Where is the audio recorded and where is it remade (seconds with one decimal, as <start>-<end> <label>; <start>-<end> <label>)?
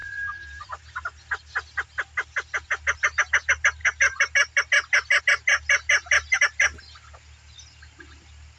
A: 0.0-0.8 remade; 0.8-8.6 recorded